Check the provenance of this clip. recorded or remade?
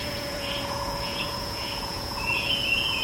remade